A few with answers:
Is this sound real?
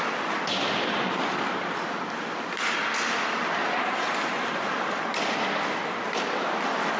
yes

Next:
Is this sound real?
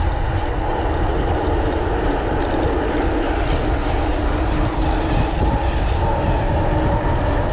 yes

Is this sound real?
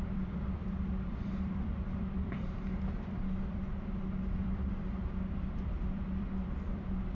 no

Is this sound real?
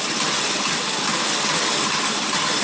yes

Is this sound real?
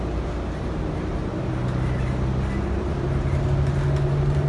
yes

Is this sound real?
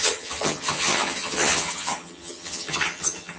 no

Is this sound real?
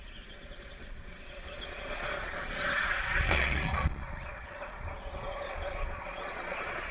no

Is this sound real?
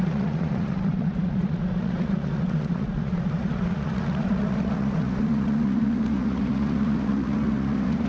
no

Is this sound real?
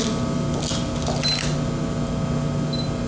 yes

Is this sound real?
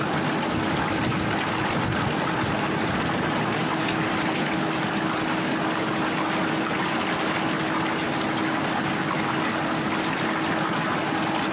yes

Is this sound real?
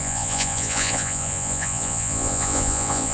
no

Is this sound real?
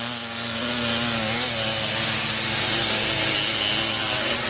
yes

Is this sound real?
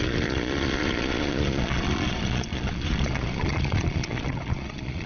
no